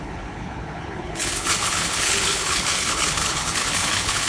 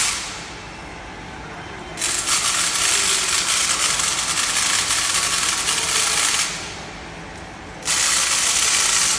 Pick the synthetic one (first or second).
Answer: first